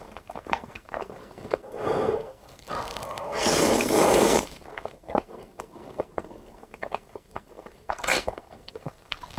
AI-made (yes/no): yes